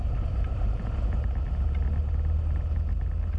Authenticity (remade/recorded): recorded